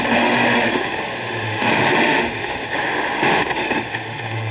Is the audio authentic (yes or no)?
no